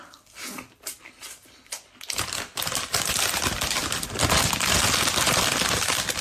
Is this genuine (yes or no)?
yes